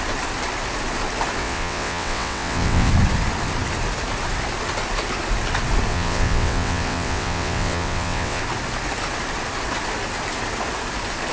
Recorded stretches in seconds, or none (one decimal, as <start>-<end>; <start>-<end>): 0.0-1.4; 2.9-5.9; 8.4-11.3

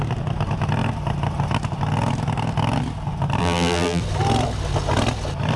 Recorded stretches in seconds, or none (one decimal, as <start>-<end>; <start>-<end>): 0.0-3.4; 4.0-5.6